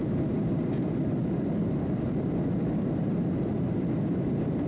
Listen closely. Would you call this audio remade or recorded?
recorded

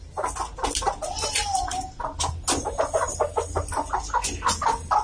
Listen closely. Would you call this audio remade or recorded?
recorded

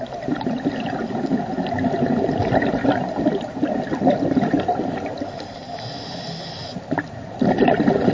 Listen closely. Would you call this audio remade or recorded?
recorded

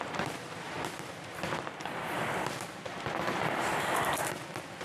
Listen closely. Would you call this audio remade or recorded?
remade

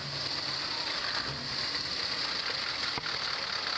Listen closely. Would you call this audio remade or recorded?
recorded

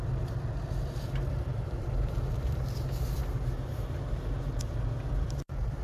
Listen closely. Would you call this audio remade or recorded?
remade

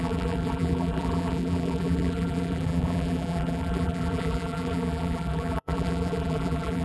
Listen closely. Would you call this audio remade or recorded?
remade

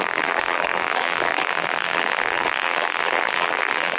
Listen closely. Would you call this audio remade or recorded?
remade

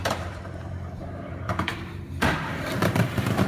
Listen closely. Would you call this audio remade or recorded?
remade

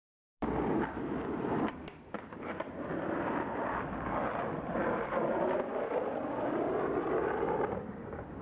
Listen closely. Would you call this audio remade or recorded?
remade